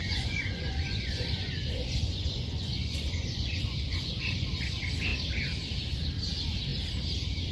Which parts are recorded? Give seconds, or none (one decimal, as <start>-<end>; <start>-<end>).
4.5-7.5